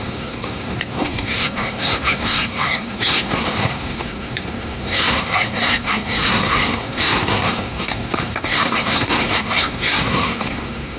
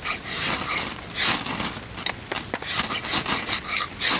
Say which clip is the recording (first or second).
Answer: second